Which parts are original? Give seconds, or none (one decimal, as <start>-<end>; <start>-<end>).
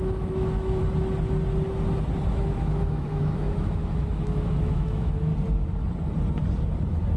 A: 0.8-2.3; 5.3-7.2